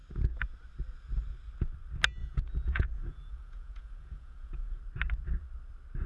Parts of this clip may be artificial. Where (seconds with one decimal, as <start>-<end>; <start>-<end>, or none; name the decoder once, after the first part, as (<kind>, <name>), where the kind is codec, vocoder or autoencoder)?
2.2-4.8 (vocoder, Vocos)